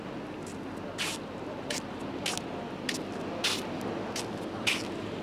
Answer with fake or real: real